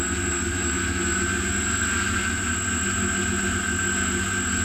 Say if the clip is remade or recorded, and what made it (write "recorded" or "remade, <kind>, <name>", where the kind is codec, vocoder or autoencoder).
recorded